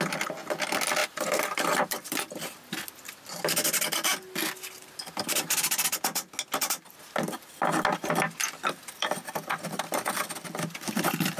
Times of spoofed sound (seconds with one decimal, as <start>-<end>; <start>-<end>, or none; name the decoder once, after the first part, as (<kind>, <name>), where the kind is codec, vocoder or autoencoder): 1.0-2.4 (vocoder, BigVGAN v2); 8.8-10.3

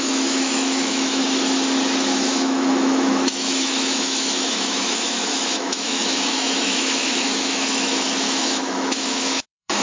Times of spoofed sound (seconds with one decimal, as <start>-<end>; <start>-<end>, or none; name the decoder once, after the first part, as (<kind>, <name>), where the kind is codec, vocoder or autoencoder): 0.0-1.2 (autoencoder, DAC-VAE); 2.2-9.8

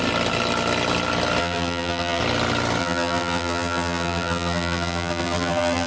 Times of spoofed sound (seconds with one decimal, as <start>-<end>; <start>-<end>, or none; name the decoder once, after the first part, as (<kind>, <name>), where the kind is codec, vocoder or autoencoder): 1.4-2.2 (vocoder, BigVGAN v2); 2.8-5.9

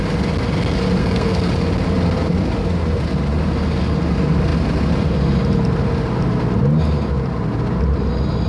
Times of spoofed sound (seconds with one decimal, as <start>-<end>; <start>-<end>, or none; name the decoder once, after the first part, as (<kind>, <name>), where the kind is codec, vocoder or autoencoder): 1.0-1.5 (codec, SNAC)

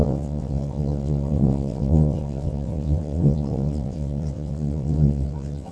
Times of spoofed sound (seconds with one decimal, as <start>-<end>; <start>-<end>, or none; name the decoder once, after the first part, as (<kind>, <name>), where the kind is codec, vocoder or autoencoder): 0.0-5.7 (vocoder, WaveNeXt)

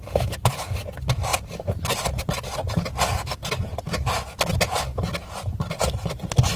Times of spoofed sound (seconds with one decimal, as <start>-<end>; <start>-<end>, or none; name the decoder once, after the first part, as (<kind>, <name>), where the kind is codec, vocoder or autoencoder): none

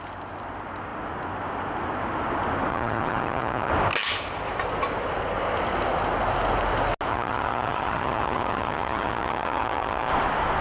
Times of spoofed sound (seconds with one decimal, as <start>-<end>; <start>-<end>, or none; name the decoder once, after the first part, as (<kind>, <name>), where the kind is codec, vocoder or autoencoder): 2.7-3.7 (vocoder, HiFi-GAN); 7.1-10.1

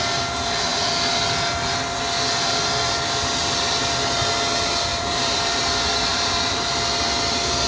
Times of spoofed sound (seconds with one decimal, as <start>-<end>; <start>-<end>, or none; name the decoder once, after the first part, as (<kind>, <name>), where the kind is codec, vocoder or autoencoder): 4.9-5.6 (vocoder, BigVGAN v2); 6.1-6.7